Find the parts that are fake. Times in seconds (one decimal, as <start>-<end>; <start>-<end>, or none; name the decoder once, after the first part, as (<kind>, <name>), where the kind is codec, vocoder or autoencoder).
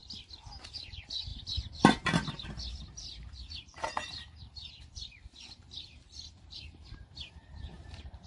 0.5-8.3 (vocoder, BigVGAN v2)